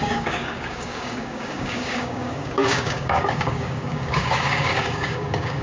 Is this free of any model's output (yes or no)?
no